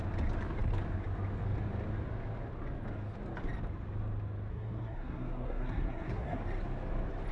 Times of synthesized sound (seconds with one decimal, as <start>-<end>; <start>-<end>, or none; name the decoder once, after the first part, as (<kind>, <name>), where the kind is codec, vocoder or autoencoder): 4.5-6.4 (codec, SNAC)